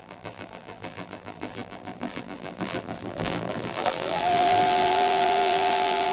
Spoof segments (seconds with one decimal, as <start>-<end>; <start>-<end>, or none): 0.0-6.1